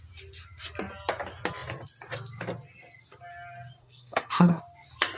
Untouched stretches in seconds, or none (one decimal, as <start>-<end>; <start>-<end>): 0.0-3.8; 4.6-5.2